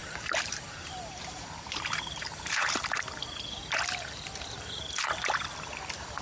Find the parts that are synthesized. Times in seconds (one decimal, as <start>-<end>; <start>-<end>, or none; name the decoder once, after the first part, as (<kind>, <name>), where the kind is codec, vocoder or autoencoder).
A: 0.0-3.2 (vocoder, BigVGAN v2)